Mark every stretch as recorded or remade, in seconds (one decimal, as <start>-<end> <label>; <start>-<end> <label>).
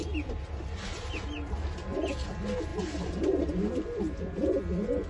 0.0-5.1 recorded